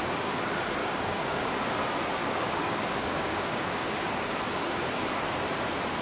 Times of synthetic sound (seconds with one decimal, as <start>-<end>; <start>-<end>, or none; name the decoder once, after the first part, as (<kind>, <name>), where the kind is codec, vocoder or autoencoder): 0.8-1.5 (codec, DAC); 2.2-3.9